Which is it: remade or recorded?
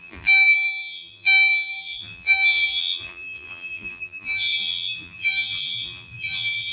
remade